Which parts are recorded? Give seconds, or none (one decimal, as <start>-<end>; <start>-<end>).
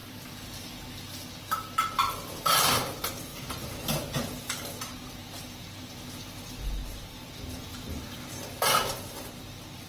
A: 0.6-9.9